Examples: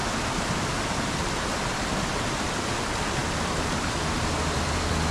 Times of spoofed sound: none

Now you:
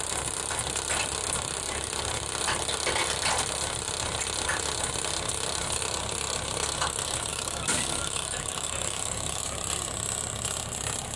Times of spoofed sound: 7.3-9.4

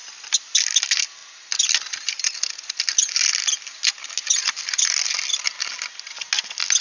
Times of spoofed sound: none

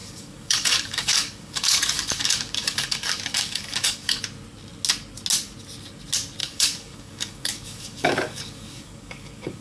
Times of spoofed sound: 0.0-4.2; 6.4-9.6

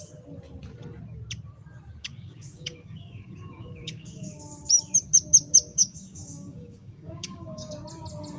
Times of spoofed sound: 2.0-4.5; 5.7-7.7

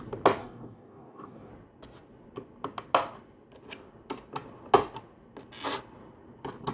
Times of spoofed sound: 0.4-1.5

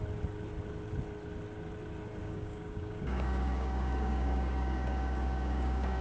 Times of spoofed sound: 2.2-6.0

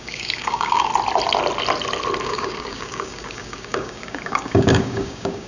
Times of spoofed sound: 0.0-0.9; 2.2-5.5